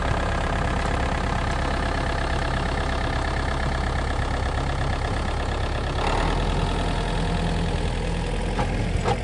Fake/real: real